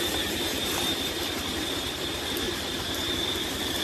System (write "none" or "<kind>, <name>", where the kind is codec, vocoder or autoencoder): none